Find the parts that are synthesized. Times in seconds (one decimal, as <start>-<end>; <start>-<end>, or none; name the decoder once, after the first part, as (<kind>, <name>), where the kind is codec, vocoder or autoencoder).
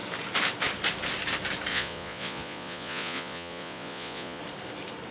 1.7-4.4 (vocoder, Vocos)